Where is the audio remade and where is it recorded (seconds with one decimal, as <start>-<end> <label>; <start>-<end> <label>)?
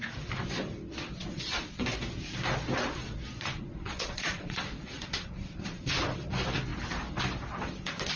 0.0-1.2 recorded; 1.2-1.8 remade; 1.8-3.0 recorded; 3.0-5.9 remade; 5.9-8.2 recorded